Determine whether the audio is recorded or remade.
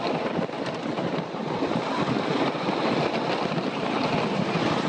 recorded